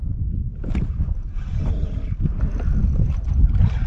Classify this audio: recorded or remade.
recorded